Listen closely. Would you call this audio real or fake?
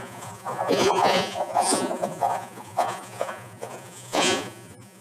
fake